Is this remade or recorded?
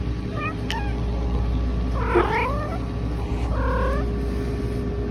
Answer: recorded